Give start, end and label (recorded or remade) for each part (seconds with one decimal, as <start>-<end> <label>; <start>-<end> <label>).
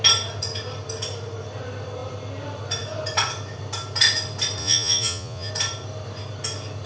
0.0-4.6 recorded; 4.6-5.5 remade; 5.5-6.9 recorded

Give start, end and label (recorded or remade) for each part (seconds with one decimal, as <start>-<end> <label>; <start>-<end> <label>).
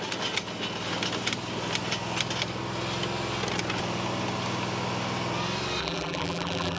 0.0-5.8 recorded; 5.8-6.8 remade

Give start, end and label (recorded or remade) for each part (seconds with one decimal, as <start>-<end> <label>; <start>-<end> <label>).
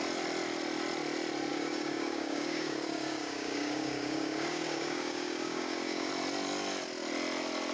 0.0-1.5 recorded; 1.5-6.1 remade; 6.1-7.7 recorded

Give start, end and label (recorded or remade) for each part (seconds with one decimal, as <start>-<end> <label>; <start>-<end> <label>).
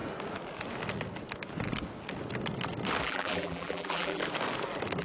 0.0-3.0 recorded; 3.0-4.2 remade; 4.2-5.0 recorded